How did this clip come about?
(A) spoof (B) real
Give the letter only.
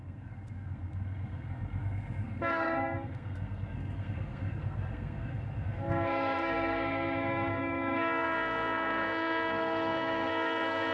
A